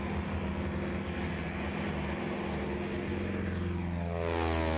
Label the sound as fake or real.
real